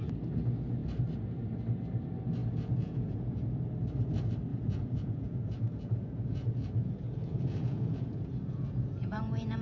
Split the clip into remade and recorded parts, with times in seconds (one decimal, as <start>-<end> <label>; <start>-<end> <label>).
0.0-2.4 recorded; 2.4-3.4 remade; 3.4-4.5 recorded; 4.5-9.6 remade